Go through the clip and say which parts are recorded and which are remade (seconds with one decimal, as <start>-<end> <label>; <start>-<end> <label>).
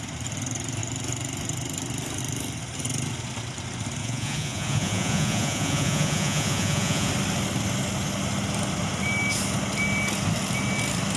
0.0-4.0 recorded; 4.0-7.1 remade; 7.1-11.2 recorded